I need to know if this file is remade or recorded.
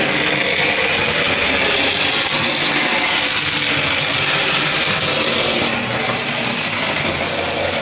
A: recorded